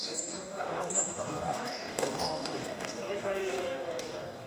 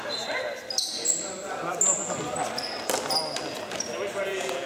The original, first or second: second